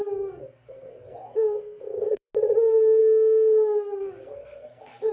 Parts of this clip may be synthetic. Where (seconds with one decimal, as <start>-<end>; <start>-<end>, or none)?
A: 0.0-2.3; 3.0-5.1